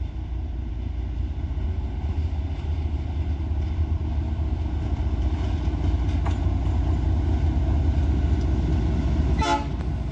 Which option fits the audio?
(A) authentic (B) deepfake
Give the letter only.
A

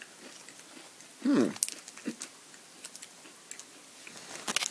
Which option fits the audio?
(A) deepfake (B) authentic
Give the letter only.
B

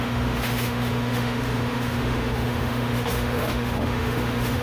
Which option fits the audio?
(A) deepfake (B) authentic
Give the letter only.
A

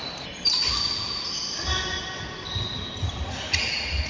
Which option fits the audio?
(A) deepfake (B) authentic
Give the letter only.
B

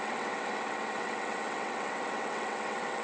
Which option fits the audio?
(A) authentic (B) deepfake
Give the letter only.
B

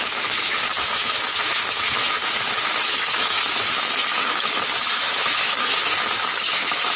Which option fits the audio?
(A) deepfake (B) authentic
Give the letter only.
A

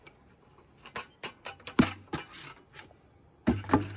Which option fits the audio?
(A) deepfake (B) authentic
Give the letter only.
B